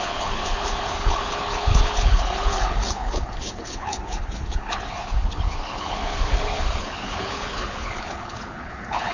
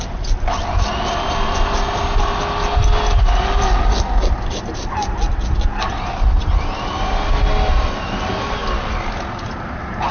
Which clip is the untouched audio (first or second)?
second